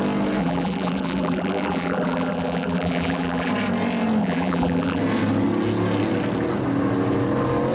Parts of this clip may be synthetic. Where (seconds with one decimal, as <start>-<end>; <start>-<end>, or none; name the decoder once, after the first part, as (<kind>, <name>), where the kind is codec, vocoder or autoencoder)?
0.4-3.5 (vocoder, BigVGAN v2); 4.2-5.0